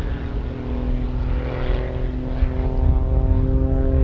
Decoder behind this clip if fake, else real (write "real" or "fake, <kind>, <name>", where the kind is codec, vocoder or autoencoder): real